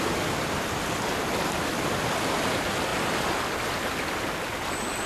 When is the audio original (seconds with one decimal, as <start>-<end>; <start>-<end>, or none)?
0.0-5.1